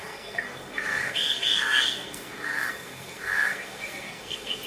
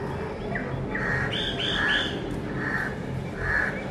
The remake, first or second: first